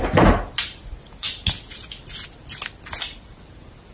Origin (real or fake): real